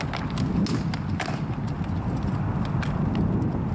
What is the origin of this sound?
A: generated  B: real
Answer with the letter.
B